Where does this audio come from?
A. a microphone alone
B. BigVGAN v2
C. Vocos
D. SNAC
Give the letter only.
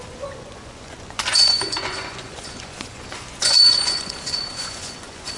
C